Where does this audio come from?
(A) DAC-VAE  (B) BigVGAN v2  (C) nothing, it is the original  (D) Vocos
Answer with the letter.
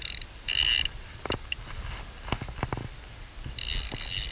C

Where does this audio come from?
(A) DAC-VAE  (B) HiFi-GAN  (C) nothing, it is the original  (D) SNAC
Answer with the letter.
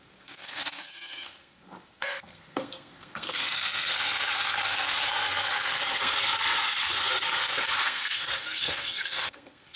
D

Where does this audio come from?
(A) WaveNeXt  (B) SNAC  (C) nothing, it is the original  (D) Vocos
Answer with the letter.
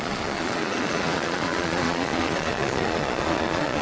D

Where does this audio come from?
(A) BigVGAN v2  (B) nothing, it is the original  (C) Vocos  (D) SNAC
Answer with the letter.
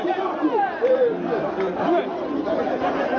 B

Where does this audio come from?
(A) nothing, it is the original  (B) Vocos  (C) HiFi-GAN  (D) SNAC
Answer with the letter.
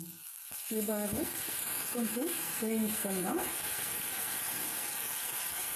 D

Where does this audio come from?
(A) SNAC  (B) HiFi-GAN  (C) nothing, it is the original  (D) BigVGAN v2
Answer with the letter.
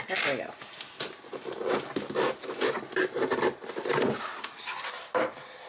C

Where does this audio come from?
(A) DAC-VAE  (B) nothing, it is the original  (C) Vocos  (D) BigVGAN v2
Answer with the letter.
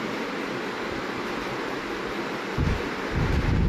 B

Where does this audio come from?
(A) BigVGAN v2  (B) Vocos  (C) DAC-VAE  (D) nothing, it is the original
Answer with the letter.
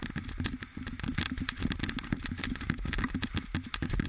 D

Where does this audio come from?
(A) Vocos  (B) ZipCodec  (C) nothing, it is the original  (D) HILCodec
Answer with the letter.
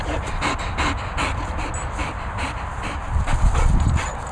C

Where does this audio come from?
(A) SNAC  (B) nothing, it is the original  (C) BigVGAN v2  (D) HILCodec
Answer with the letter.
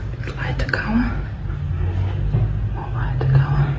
B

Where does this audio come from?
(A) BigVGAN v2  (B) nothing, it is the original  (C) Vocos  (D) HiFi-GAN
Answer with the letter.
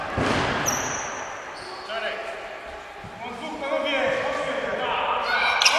B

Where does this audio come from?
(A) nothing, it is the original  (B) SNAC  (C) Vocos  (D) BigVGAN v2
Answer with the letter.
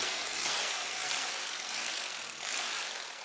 B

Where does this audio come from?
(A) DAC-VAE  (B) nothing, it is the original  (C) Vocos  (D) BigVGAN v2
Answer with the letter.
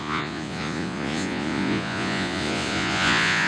C